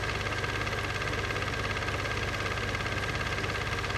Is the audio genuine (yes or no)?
yes